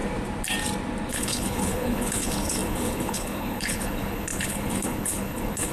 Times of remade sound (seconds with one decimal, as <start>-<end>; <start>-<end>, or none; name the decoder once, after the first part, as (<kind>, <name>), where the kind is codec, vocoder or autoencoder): 1.1-5.7 (codec, HILCodec)